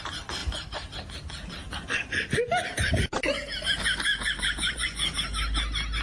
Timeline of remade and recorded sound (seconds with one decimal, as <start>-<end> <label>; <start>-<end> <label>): 0.0-4.1 recorded; 4.1-5.1 remade; 5.1-6.0 recorded